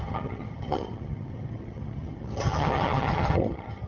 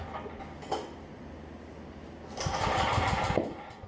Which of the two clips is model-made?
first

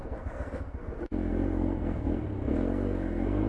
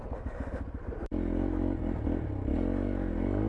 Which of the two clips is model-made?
first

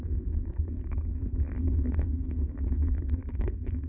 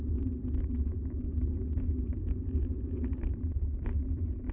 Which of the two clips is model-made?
first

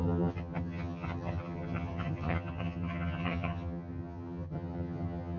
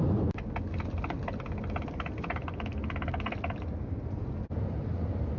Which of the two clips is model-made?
first